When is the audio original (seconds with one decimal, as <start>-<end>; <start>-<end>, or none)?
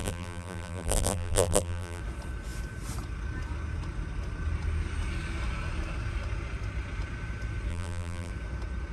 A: 2.0-7.7; 8.3-8.9